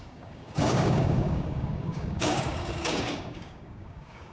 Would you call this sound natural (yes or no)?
no